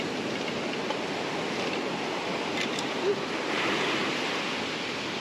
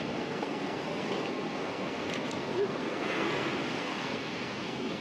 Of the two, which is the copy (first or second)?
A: second